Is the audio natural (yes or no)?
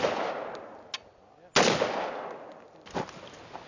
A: yes